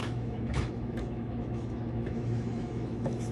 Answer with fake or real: fake